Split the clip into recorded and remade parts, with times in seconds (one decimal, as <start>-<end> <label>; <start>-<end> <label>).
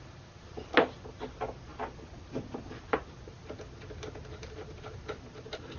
0.0-5.8 recorded